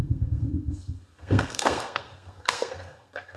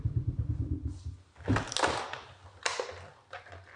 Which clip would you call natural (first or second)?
second